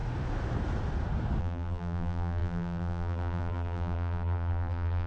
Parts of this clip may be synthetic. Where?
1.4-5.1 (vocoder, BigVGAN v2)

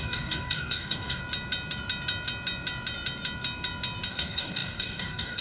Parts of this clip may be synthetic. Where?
0.0-1.2 (codec, DAC); 4.1-5.4

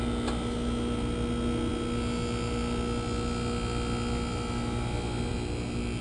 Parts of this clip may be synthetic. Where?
none

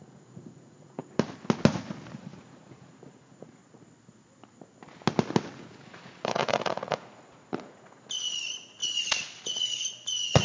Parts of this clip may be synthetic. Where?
0.0-1.0 (vocoder, Vocos); 2.2-3.6; 5.6-10.4

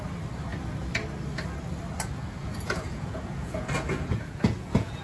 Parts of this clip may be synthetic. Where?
2.4-5.0 (vocoder, Vocos)

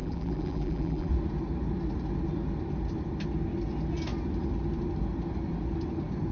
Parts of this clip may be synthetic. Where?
0.0-1.1 (vocoder, BigVGAN v2)